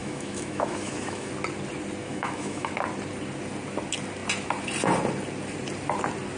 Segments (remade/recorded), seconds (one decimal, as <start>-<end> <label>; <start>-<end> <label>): 0.0-1.3 remade; 1.3-2.0 recorded; 2.0-2.7 remade; 2.7-6.4 recorded